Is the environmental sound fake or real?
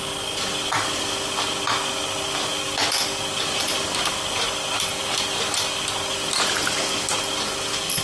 real